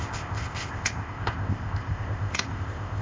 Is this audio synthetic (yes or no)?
yes